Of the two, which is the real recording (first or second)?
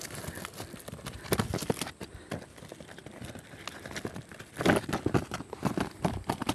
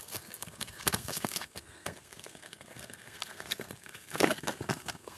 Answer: first